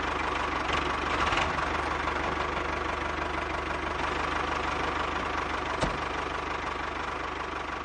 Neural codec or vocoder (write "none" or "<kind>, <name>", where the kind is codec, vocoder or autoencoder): none